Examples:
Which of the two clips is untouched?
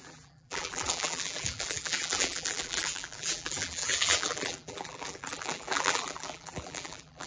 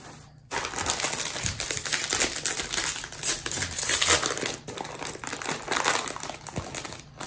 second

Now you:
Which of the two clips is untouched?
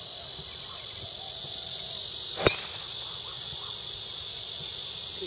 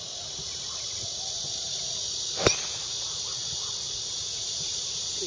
first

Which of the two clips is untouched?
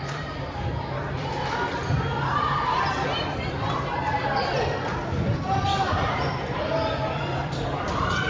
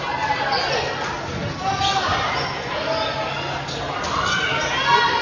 second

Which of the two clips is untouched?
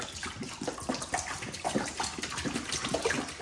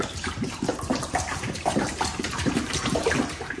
first